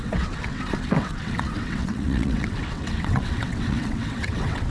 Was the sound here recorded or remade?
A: remade